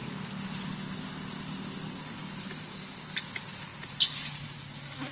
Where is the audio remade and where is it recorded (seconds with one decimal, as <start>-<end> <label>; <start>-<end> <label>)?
0.0-5.1 recorded